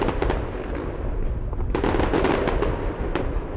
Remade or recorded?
recorded